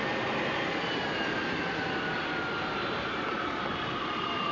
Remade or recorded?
recorded